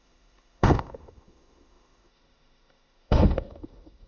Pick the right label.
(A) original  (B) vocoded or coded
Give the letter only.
B